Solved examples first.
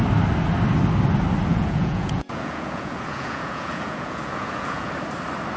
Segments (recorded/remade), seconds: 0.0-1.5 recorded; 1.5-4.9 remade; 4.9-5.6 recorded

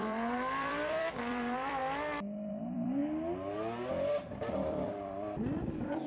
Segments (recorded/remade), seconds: 0.0-1.8 remade; 1.8-2.5 recorded; 2.5-3.0 remade; 3.0-3.9 recorded; 3.9-6.1 remade